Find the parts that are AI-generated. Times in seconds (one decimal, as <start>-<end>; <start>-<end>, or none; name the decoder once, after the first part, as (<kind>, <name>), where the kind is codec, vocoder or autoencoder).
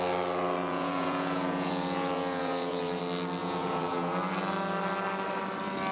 0.6-3.0 (vocoder, Vocos); 3.4-4.1